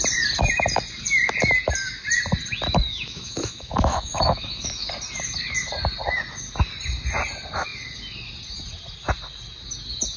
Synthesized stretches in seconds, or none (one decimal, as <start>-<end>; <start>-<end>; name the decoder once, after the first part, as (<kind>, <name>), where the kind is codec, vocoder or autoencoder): 2.9-4.9 (autoencoder, DAC-VAE)